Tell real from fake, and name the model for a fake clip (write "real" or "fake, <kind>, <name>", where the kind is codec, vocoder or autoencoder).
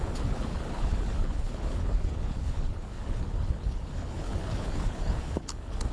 fake, codec, HILCodec